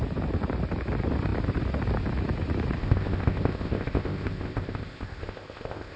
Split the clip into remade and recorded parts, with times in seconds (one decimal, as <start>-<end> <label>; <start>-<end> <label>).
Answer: 0.0-2.8 recorded; 2.8-6.0 remade